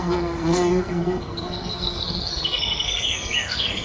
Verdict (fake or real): fake